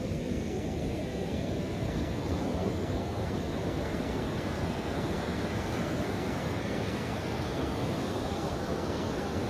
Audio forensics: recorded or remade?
remade